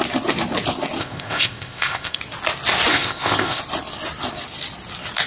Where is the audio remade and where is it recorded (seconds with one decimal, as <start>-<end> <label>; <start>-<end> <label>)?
0.0-1.0 recorded; 1.0-2.2 remade; 2.2-2.9 recorded; 2.9-3.6 remade; 3.6-5.3 recorded